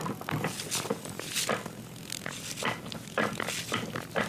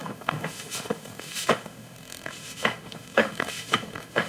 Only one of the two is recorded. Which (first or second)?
first